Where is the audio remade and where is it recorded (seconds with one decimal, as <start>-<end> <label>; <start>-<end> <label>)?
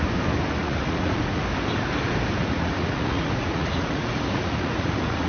0.0-0.6 recorded; 0.6-1.4 remade; 1.4-2.4 recorded; 2.4-5.3 remade